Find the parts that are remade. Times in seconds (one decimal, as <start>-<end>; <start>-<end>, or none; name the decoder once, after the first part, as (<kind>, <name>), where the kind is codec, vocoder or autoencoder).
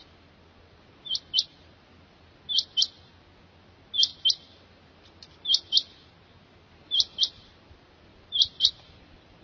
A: none